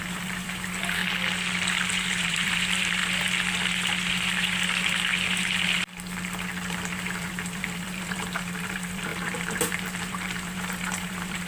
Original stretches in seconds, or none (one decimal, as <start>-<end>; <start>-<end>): 1.0-1.9; 3.0-6.7